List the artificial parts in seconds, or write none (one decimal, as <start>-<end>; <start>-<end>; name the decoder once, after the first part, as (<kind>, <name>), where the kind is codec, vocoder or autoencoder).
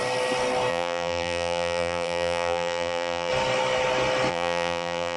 0.7-3.3 (vocoder, BigVGAN v2); 4.3-5.2